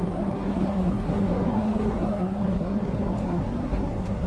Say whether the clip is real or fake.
fake